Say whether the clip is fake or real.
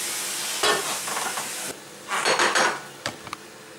real